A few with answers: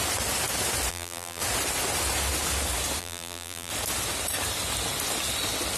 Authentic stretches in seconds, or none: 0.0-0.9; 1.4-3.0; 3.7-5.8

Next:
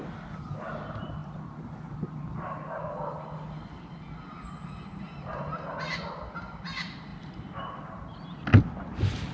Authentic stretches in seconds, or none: 0.0-1.2; 2.3-9.3